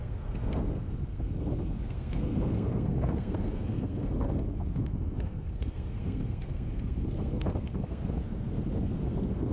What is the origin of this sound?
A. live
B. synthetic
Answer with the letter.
B